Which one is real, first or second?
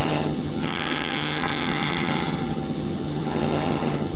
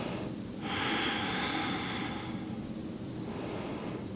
second